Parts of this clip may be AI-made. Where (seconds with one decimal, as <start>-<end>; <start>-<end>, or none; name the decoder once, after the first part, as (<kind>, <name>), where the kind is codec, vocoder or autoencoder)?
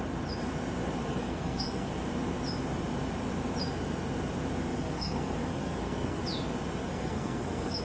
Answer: 1.1-1.9 (codec, SNAC); 4.7-6.2; 6.8-7.8